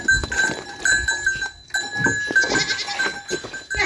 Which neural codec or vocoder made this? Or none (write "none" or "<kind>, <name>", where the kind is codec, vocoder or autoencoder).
none